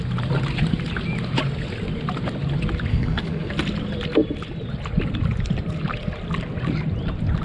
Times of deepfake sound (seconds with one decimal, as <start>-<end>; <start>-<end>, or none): 2.9-3.5